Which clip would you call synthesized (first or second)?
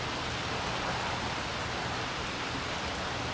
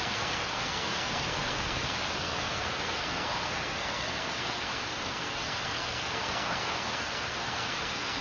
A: second